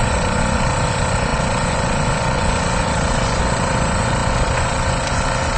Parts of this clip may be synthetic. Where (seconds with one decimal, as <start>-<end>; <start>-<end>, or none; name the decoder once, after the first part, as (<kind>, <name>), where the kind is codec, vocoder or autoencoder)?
0.0-5.6 (vocoder, Vocos)